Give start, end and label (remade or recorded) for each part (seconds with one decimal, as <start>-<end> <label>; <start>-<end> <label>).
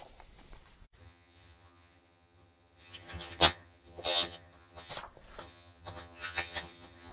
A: 0.0-1.0 recorded; 1.0-4.9 remade; 4.9-5.4 recorded; 5.4-7.1 remade